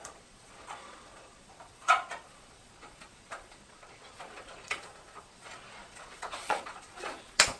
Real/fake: fake